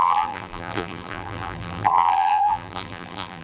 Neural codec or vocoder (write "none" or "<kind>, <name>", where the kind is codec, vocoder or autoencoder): vocoder, BigVGAN v2